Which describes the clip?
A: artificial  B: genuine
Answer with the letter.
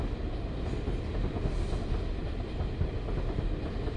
B